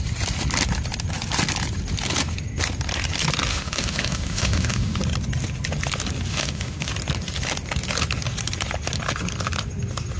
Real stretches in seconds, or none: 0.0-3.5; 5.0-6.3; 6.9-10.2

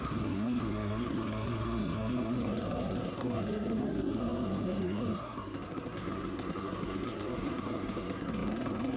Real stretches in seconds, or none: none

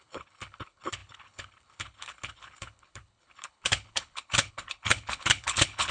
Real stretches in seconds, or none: none

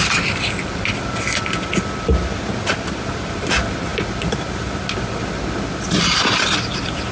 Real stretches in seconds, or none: 0.0-7.1

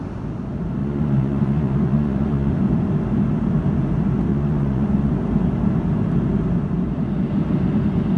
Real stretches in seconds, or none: 0.0-0.8; 2.5-4.3; 5.1-8.2

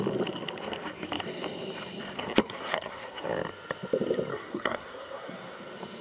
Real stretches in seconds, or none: 0.0-2.4; 3.2-4.3; 5.6-6.0

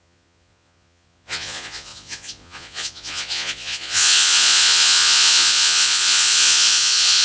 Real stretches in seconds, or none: none

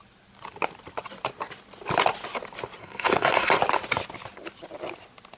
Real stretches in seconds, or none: 0.0-2.8; 3.5-5.4